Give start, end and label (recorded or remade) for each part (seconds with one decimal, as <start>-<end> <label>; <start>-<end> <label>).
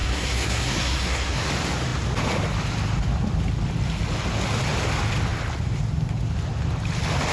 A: 0.0-1.5 remade; 1.5-7.3 recorded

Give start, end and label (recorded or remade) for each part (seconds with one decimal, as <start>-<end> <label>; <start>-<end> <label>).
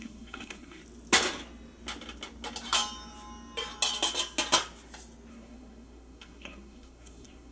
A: 0.0-0.8 remade; 0.8-5.3 recorded; 5.3-7.5 remade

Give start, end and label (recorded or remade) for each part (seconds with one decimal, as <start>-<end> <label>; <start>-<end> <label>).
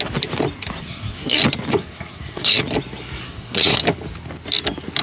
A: 0.0-0.8 recorded; 0.8-1.4 remade; 1.4-1.8 recorded; 1.8-2.6 remade; 2.6-3.2 recorded; 3.2-3.8 remade; 3.8-5.0 recorded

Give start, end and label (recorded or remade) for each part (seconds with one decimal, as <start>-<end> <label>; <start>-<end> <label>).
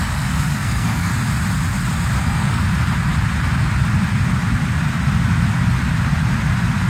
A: 0.0-1.1 remade; 1.1-2.2 recorded; 2.2-2.6 remade; 2.6-6.9 recorded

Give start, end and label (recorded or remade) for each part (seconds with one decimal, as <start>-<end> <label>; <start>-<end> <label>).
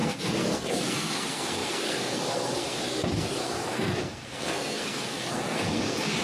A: 0.0-6.2 remade